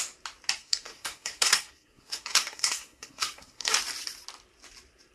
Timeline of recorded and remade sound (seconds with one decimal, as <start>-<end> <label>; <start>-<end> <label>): 0.0-0.6 recorded; 0.6-3.7 remade; 3.7-5.1 recorded